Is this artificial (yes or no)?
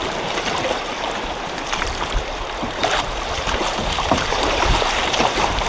yes